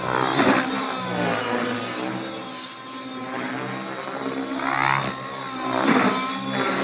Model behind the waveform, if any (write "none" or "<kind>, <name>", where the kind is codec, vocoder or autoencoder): none